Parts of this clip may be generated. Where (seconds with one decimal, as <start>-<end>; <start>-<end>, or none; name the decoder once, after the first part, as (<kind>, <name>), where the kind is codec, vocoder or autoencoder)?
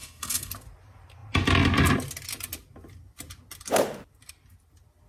0.0-0.5 (codec, SNAC)